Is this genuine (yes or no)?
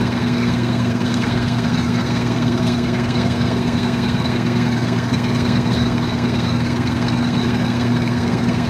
no